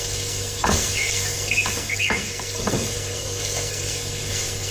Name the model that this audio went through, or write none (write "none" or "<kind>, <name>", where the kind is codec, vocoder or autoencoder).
codec, SNAC